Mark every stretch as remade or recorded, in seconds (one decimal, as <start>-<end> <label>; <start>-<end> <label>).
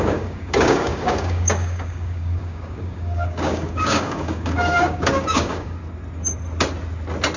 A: 0.0-5.8 remade; 5.8-7.4 recorded